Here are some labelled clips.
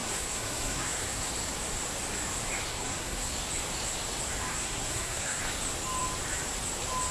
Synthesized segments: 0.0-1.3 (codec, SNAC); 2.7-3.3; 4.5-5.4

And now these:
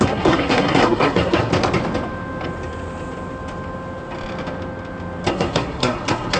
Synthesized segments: 0.0-1.5 (codec, SNAC); 5.3-6.4

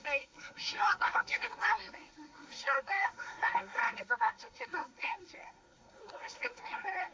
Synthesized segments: 0.0-7.1 (codec, SNAC)

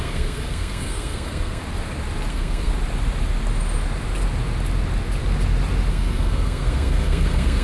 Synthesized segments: 0.0-1.6 (codec, SNAC); 2.3-2.7; 5.9-7.6

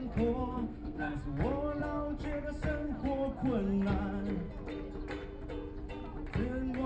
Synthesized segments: 0.4-1.1 (codec, SNAC)

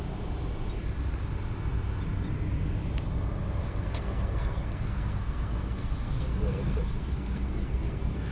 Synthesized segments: 3.6-8.3 (codec, SNAC)

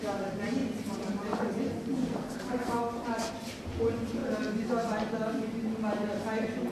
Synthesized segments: 2.0-2.8 (codec, SNAC)